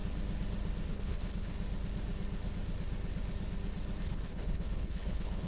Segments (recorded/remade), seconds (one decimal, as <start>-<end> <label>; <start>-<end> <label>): 0.0-0.9 recorded; 0.9-1.5 remade; 1.5-4.0 recorded; 4.0-5.5 remade